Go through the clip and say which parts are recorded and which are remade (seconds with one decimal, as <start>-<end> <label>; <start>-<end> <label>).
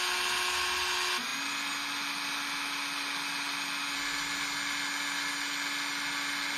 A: 0.0-6.6 recorded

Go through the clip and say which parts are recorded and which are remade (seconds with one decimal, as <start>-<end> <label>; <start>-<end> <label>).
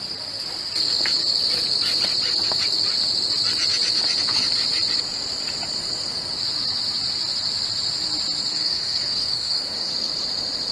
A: 0.0-8.5 recorded; 8.5-9.9 remade; 9.9-10.7 recorded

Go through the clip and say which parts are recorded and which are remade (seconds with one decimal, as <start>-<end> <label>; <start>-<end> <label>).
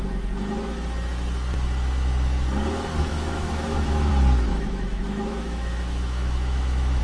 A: 0.0-3.1 recorded; 3.1-4.1 remade; 4.1-4.5 recorded; 4.5-7.0 remade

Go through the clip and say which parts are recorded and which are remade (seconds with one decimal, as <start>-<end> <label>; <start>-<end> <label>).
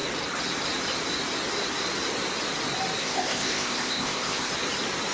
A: 0.0-3.0 recorded; 3.0-4.5 remade; 4.5-5.1 recorded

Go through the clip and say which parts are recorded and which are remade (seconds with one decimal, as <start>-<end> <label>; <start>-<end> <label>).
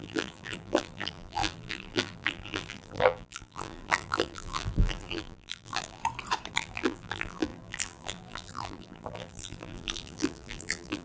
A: 0.0-6.0 remade; 6.0-6.5 recorded; 6.5-11.0 remade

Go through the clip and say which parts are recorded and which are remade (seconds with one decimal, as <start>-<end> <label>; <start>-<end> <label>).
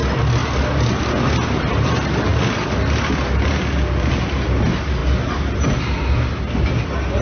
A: 0.0-7.2 recorded